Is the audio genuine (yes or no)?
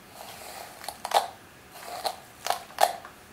yes